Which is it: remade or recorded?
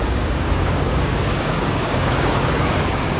remade